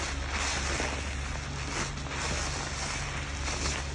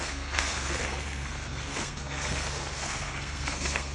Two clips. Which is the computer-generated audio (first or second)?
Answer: second